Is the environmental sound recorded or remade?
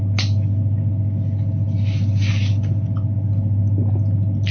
recorded